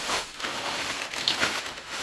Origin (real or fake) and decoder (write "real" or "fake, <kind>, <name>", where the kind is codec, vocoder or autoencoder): fake, autoencoder, DAC-VAE